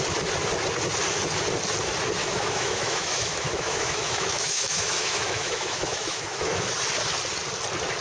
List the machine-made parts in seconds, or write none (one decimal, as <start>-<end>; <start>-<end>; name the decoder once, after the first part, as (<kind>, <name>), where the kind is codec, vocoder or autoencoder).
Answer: 2.2-6.7 (autoencoder, DAC-VAE)